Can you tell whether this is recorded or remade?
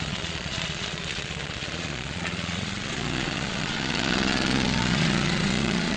remade